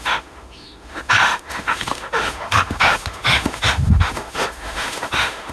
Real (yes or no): no